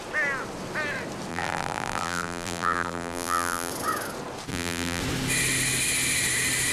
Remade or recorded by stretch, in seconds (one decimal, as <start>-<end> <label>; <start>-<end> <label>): 0.0-1.3 recorded; 1.3-3.7 remade; 3.7-4.5 recorded; 4.5-5.0 remade; 5.0-6.7 recorded